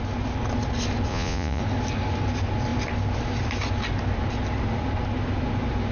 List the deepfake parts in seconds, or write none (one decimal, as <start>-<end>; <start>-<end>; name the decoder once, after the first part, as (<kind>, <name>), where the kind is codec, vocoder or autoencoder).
1.1-1.6 (vocoder, Vocos)